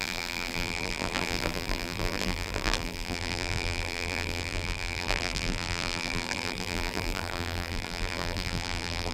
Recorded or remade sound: remade